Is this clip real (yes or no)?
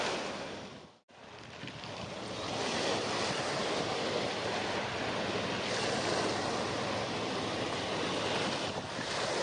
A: yes